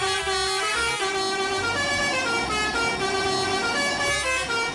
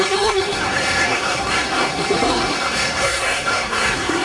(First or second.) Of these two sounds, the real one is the first